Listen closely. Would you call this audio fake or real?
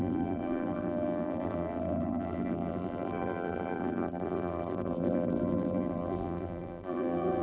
fake